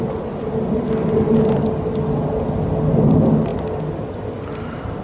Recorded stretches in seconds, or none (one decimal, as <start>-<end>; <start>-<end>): 0.0-5.0